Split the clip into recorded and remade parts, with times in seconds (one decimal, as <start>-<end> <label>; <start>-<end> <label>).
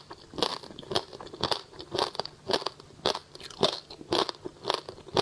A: 0.0-5.2 recorded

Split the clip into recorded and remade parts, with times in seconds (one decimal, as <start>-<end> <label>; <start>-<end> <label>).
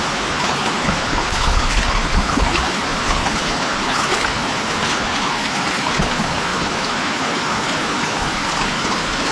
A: 0.0-9.3 remade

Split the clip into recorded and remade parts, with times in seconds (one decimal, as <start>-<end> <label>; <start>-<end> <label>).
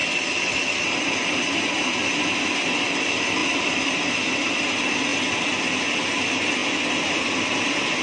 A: 0.0-8.0 recorded